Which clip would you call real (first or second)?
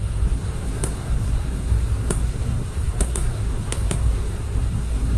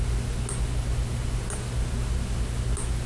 second